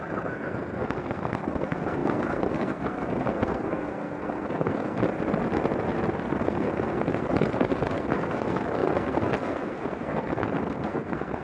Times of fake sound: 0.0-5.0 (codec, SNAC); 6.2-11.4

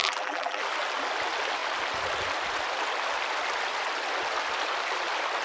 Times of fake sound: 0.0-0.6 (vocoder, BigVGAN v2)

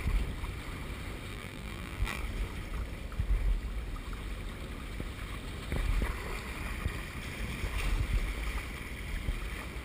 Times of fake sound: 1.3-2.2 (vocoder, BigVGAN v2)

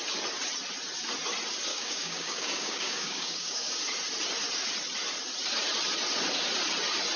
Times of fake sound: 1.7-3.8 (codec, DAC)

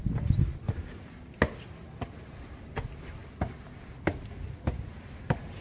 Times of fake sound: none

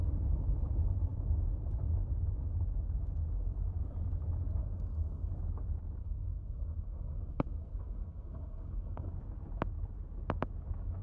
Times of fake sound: 4.6-5.3 (codec, SNAC); 6.0-9.1

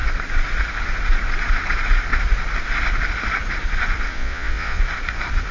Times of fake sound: 4.1-4.8 (vocoder, Vocos)